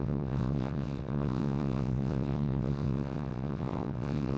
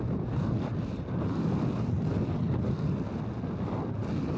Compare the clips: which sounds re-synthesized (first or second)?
first